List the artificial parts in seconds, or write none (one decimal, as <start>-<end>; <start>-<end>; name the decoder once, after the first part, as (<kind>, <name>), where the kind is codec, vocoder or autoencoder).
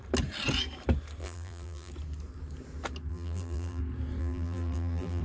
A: 1.2-1.9 (vocoder, BigVGAN v2); 3.1-3.8; 4.2-5.2